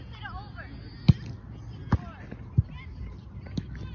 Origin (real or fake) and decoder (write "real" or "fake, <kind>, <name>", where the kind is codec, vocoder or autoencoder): real